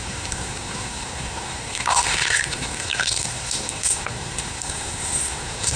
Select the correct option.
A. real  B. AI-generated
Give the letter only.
B